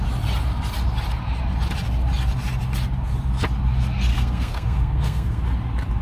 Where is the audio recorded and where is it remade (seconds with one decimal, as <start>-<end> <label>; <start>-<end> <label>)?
0.0-4.1 recorded; 4.1-5.4 remade; 5.4-6.0 recorded